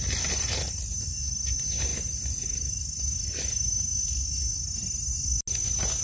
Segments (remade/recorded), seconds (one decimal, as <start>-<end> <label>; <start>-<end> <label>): 0.0-6.0 recorded